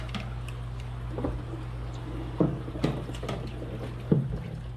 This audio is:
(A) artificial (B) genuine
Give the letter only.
B